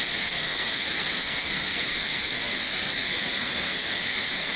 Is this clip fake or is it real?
fake